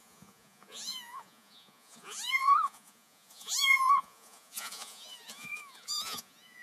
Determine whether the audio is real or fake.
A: fake